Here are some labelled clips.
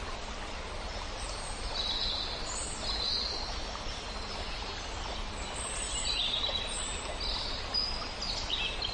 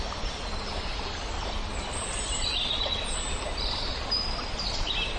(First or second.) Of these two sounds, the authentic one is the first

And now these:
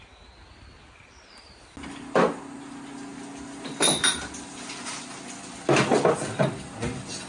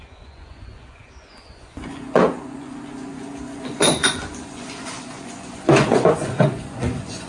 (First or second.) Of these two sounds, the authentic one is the first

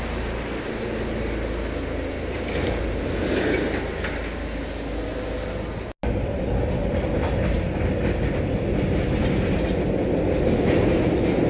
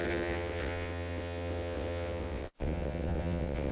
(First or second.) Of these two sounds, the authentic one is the first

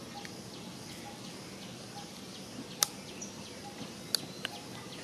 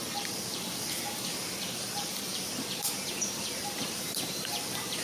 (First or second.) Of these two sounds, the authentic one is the first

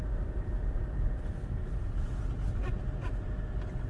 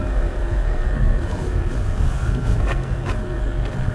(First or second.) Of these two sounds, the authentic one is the first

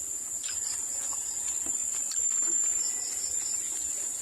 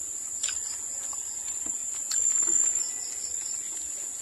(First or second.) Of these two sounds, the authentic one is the second